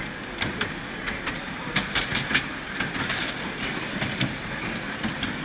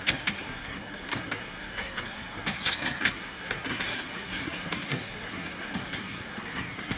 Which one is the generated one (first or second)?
second